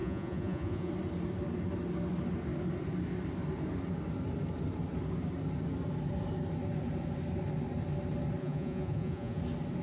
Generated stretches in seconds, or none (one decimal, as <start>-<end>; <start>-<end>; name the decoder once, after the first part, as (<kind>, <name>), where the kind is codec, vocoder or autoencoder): 0.0-0.9 (vocoder, Vocos); 8.4-9.4